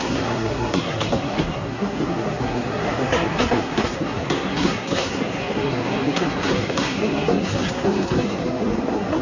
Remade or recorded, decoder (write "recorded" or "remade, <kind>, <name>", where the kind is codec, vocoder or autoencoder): remade, codec, SNAC